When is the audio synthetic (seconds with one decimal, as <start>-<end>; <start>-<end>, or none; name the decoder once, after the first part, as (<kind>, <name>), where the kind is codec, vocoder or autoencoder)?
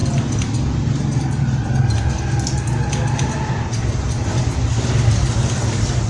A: none